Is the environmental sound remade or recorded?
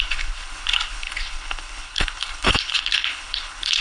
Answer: remade